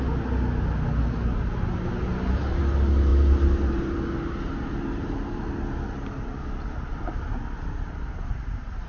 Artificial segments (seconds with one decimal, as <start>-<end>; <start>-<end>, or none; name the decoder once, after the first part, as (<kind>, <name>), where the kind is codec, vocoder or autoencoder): none